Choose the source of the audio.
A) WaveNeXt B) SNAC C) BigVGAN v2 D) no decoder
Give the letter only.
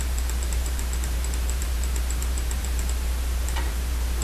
C